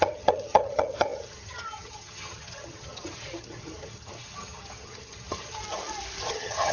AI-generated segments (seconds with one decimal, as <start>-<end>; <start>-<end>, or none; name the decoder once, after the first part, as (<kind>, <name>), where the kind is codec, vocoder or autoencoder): 0.0-5.6 (vocoder, HiFi-GAN); 6.3-6.7